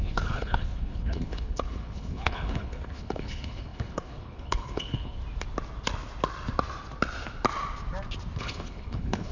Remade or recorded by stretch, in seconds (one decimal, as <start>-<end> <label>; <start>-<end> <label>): 0.0-5.2 remade; 5.2-8.4 recorded; 8.4-9.3 remade

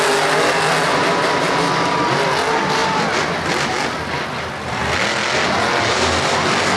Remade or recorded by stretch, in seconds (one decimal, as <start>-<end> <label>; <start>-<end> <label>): 0.0-6.8 recorded

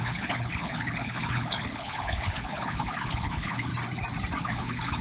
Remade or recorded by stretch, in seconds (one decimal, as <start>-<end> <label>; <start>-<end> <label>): 0.0-3.7 remade; 3.7-4.4 recorded; 4.4-5.0 remade